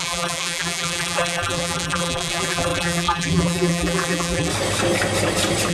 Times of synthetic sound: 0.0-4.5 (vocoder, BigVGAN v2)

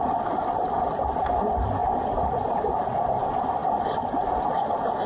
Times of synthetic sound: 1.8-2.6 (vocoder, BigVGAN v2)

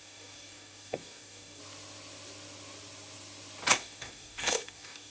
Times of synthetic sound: 0.0-1.6 (codec, DAC); 3.7-5.1

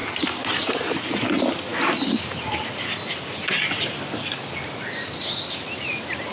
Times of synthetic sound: none

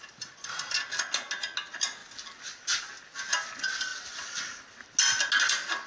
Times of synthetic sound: none

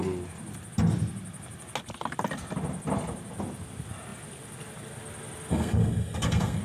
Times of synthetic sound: 5.5-6.6 (codec, SNAC)

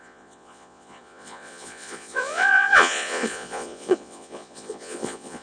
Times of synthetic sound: 0.0-5.4 (vocoder, Vocos)

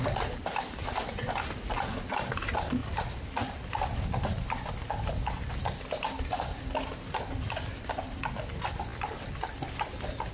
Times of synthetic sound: none